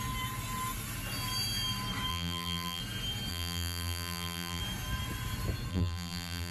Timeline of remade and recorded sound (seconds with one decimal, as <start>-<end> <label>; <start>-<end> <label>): 0.0-2.1 recorded; 2.1-2.8 remade; 2.8-3.3 recorded; 3.3-4.6 remade; 4.6-5.7 recorded; 5.7-6.5 remade